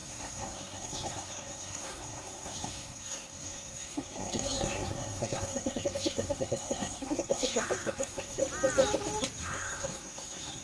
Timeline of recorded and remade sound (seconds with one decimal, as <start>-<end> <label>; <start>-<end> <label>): 0.0-8.4 remade; 8.4-9.4 recorded; 9.4-10.6 remade

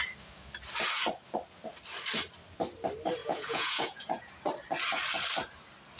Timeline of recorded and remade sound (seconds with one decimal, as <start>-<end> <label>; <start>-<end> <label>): 0.0-3.2 recorded; 3.2-4.3 remade; 4.3-6.0 recorded

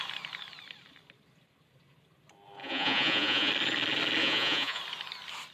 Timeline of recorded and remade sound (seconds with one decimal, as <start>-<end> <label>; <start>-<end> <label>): 0.0-2.6 recorded; 2.6-3.5 remade; 3.5-4.2 recorded; 4.2-4.8 remade; 4.8-5.5 recorded

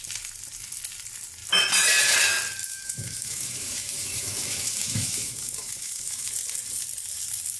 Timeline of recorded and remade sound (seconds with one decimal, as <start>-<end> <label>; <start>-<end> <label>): 0.0-2.6 recorded; 2.6-6.3 remade; 6.3-7.6 recorded

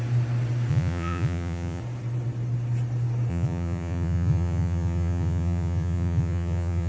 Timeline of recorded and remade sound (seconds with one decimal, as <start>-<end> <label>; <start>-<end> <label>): 0.0-0.7 recorded; 0.7-1.8 remade; 1.8-3.3 recorded; 3.3-6.9 remade

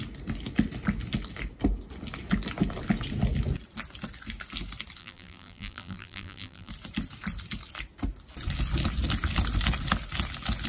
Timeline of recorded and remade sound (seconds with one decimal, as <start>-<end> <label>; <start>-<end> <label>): 0.0-5.0 recorded; 5.0-6.7 remade; 6.7-10.7 recorded